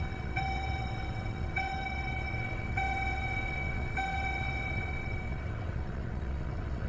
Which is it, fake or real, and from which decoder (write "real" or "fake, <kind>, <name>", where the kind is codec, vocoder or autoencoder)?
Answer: fake, vocoder, WaveNeXt